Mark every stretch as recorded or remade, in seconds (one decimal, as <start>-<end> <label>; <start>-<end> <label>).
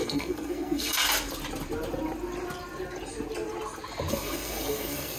0.0-1.0 remade; 1.0-4.1 recorded; 4.1-5.2 remade